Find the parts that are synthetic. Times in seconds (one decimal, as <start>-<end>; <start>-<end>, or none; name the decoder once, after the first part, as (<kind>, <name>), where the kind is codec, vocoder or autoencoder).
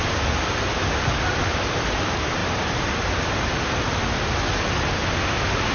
none